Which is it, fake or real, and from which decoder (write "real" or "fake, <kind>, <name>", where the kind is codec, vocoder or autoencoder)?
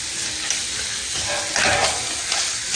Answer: real